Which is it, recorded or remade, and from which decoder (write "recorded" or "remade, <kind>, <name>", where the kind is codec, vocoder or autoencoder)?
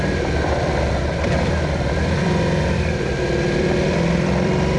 remade, vocoder, BigVGAN v2